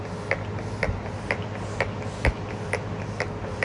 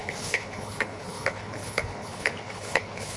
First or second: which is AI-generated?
second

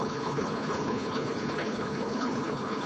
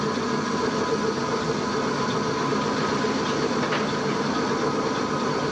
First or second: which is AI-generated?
first